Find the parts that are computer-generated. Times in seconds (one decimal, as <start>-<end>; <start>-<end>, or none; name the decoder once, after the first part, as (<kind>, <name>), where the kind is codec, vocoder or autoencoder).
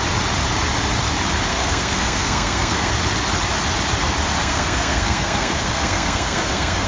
1.5-2.9 (codec, SNAC); 4.4-6.9